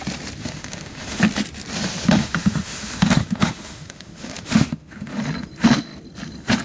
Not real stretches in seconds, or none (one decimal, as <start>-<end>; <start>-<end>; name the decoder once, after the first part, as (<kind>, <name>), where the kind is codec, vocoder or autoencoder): 0.4-1.2 (autoencoder, DAC-VAE); 2.2-5.2